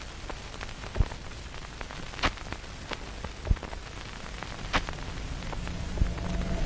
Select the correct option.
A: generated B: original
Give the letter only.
B